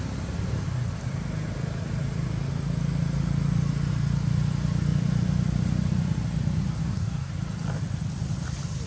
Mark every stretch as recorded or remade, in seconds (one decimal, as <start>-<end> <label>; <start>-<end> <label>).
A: 0.0-6.8 recorded; 6.8-7.3 remade; 7.3-8.9 recorded